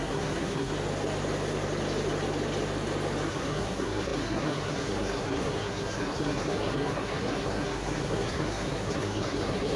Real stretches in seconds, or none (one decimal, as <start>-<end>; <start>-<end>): 0.7-3.3